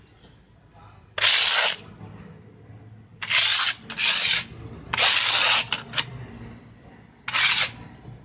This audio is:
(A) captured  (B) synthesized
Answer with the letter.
A